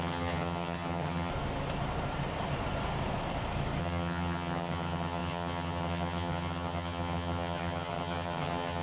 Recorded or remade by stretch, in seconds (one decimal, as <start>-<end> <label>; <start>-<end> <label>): 0.0-1.3 remade; 1.3-3.8 recorded; 3.8-8.8 remade